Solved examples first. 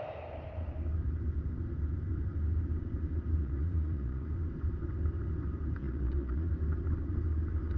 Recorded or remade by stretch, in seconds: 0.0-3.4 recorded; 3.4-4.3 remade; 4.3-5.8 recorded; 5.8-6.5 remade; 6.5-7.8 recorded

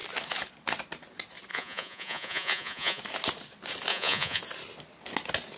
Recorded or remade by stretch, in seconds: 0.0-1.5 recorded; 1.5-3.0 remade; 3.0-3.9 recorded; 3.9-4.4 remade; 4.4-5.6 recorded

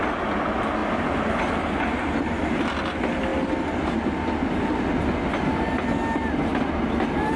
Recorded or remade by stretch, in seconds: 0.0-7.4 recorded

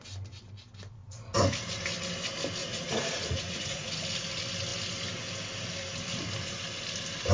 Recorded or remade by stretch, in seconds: 0.0-2.6 recorded; 2.6-4.0 remade; 4.0-7.3 recorded

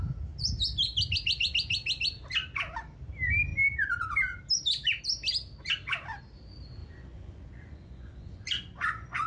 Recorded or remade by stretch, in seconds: 0.0-6.8 recorded; 6.8-9.3 remade

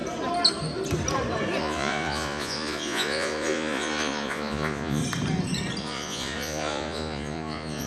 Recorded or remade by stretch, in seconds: 0.0-1.6 recorded; 1.6-5.0 remade; 5.0-5.8 recorded; 5.8-7.9 remade

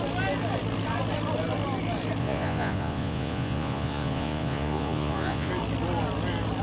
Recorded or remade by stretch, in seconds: 0.0-2.2 recorded; 2.2-5.5 remade; 5.5-6.6 recorded